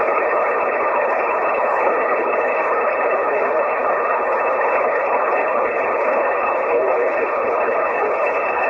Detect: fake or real fake